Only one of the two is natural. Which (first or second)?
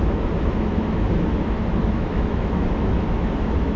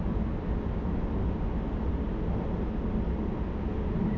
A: second